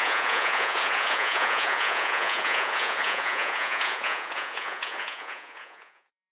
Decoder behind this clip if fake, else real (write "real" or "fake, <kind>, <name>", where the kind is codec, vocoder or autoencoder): fake, vocoder, Vocos